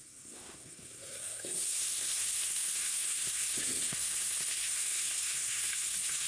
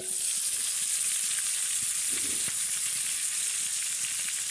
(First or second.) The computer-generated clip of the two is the first